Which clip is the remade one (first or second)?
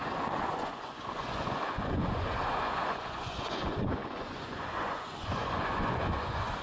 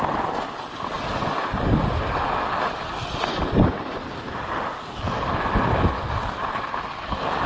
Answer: first